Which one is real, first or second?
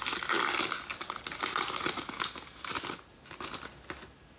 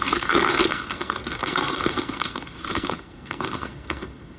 first